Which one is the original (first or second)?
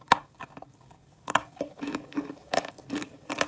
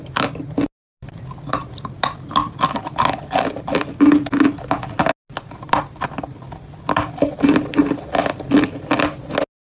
second